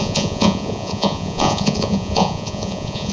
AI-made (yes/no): yes